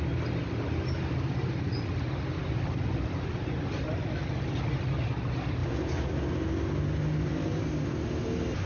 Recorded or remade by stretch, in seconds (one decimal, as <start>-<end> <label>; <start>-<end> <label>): 0.0-8.7 recorded